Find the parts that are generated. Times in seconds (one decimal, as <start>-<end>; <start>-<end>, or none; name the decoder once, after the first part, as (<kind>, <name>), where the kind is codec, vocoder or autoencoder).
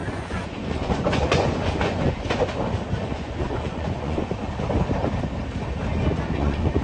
0.0-2.4 (vocoder, Vocos); 3.0-4.3; 5.9-6.8